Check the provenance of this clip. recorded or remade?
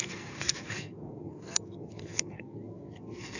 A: remade